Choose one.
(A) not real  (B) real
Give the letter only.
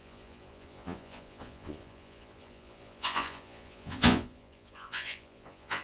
A